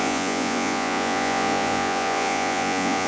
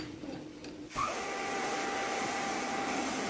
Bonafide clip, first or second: second